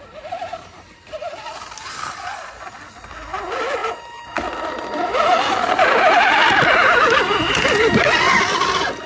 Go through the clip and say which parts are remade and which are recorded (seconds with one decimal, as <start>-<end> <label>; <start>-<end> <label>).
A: 0.0-9.1 recorded